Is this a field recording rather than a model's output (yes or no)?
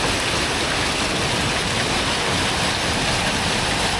yes